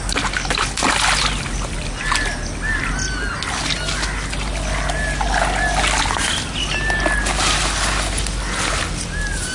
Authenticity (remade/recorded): recorded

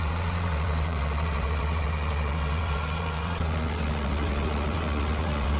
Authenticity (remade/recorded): remade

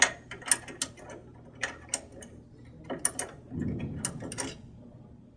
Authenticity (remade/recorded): recorded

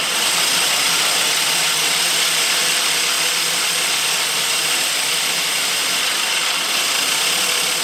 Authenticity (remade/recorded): recorded